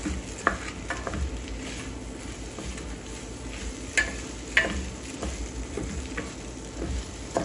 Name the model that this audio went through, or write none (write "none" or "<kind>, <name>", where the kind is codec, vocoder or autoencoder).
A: none